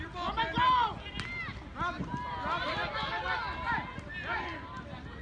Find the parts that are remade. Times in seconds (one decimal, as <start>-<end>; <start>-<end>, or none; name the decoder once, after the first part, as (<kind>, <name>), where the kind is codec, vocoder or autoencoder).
none